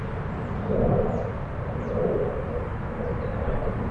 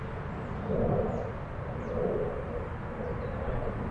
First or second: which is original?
second